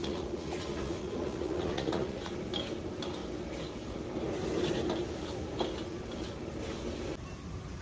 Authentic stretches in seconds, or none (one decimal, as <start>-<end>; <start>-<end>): 2.3-7.8